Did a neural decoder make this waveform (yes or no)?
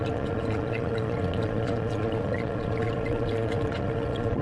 yes